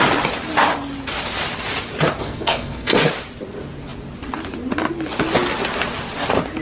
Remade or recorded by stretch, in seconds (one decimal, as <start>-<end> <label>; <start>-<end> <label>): 0.0-2.2 recorded; 2.2-2.9 remade; 2.9-6.6 recorded